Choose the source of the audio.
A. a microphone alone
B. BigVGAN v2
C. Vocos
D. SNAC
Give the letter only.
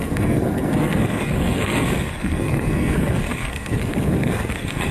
D